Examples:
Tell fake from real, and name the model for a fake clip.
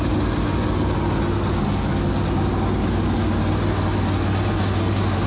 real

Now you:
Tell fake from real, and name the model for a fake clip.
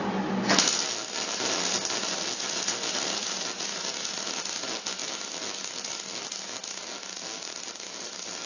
real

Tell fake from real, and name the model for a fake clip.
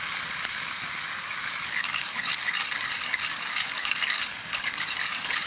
fake, codec, DAC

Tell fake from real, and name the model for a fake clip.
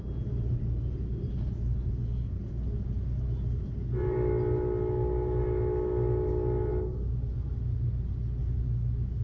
real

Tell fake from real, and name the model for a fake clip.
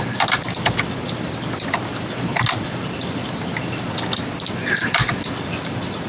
real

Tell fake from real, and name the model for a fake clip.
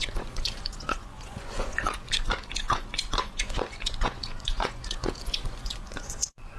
fake, vocoder, Vocos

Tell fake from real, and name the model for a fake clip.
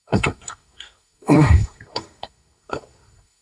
fake, codec, SNAC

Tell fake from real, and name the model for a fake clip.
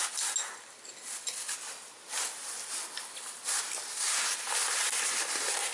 real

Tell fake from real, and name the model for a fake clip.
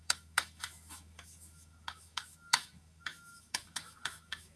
fake, autoencoder, DAC-VAE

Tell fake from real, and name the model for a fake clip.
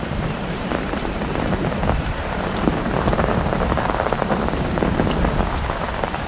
fake, vocoder, BigVGAN v2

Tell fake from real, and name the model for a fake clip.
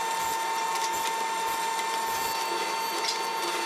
real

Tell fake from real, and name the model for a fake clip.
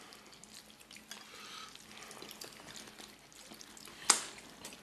real